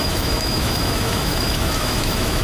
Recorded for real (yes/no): no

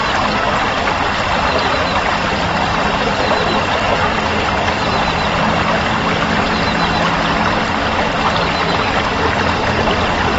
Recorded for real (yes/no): yes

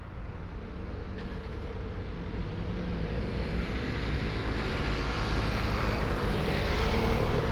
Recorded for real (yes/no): yes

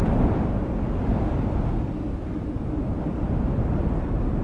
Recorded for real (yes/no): yes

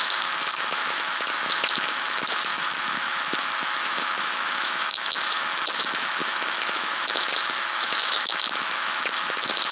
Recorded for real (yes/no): no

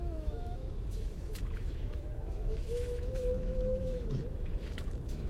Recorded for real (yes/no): no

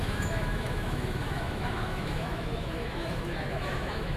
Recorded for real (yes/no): no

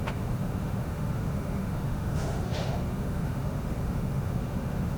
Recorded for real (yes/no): no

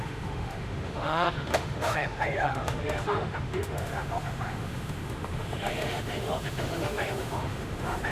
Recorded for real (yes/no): no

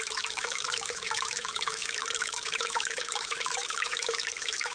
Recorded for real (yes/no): no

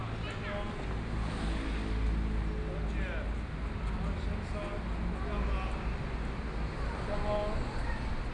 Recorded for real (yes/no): yes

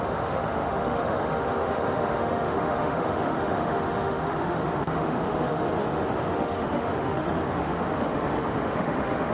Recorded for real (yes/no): no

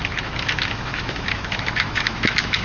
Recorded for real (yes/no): no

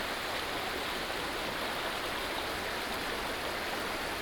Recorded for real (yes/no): yes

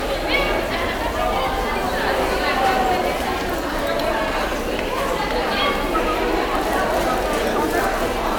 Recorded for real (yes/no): yes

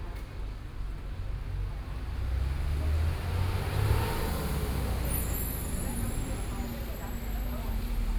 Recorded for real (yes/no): yes